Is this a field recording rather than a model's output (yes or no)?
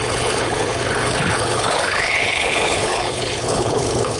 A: no